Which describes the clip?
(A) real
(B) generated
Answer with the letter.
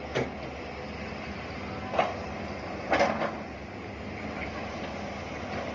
A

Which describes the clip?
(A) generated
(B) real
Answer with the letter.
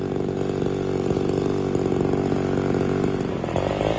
B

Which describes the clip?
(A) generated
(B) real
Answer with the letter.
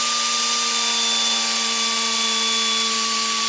B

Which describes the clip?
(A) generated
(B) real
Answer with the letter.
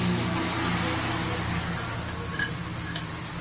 B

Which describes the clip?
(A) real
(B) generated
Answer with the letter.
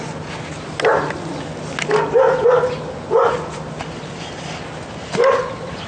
A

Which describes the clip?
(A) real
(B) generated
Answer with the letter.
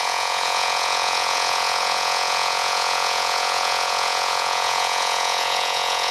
B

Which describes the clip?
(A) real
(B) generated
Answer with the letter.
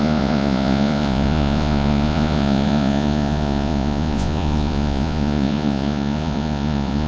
B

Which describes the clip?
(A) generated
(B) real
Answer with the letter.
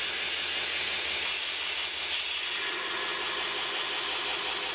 B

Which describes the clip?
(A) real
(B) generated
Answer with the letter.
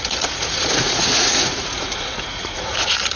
B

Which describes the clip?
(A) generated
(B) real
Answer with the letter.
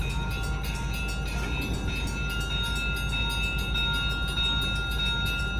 B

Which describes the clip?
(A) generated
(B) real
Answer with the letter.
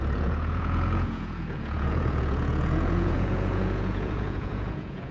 A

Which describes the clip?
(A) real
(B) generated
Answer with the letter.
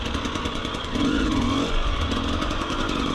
B